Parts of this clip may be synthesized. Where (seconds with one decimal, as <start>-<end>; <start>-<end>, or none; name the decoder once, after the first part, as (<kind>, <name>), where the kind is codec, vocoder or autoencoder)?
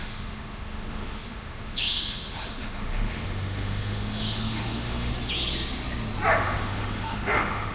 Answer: 0.0-5.1 (autoencoder, DAC-VAE); 6.4-7.7